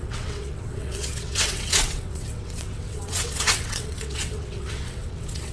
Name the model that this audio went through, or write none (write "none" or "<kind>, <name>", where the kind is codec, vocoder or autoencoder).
vocoder, WaveNeXt